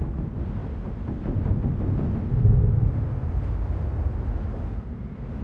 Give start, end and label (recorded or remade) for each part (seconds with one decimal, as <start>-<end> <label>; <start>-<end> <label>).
0.0-5.4 recorded